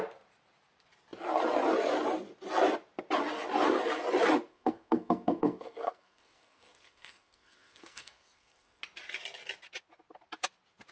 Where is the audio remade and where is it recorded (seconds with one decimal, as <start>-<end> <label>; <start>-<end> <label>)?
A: 0.0-4.5 recorded; 4.5-8.8 remade; 8.8-10.9 recorded